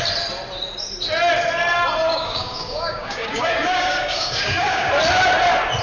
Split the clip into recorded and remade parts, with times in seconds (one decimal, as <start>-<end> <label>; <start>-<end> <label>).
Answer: 0.0-2.1 recorded; 2.1-4.9 remade; 4.9-5.8 recorded